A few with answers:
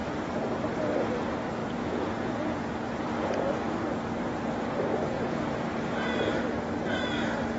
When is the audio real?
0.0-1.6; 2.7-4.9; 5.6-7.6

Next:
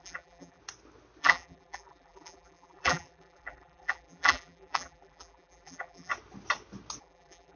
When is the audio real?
0.6-1.2; 6.1-7.0

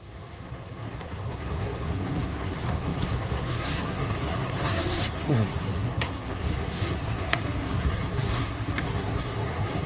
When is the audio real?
none